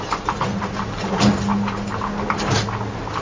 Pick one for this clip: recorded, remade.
recorded